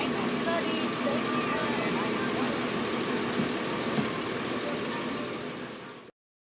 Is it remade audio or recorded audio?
recorded